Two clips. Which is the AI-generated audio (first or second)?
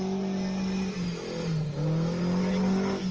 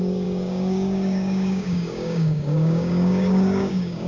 second